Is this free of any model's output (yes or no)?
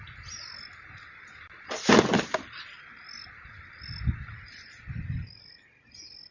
yes